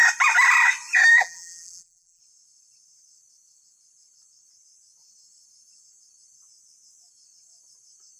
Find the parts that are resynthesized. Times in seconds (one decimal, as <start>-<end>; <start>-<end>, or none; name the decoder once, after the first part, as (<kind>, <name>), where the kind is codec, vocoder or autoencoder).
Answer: 1.1-2.2 (vocoder, BigVGAN v2)